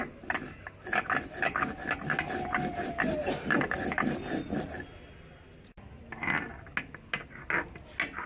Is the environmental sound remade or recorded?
recorded